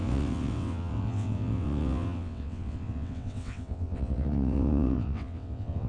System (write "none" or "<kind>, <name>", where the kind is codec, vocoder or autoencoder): vocoder, WaveNeXt